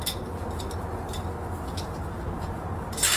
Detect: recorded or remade recorded